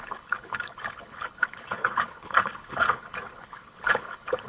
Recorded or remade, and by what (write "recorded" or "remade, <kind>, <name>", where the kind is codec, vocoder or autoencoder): remade, codec, HILCodec